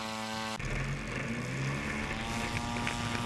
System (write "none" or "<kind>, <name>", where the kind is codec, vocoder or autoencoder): none